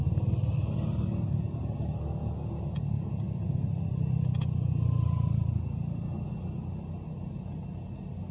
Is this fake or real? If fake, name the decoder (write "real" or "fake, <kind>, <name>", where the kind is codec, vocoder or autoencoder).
real